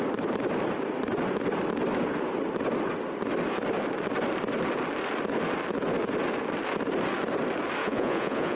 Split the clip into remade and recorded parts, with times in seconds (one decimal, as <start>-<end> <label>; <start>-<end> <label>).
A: 0.0-7.8 recorded; 7.8-8.6 remade